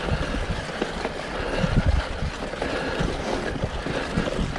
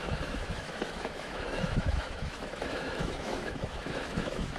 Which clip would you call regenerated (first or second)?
second